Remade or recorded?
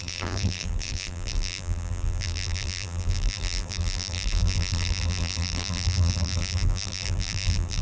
remade